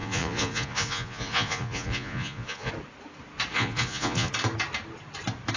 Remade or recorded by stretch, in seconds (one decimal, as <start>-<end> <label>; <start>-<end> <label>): 0.0-2.7 remade; 2.7-3.5 recorded; 3.5-4.3 remade; 4.3-5.6 recorded